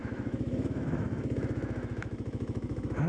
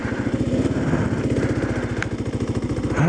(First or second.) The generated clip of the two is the first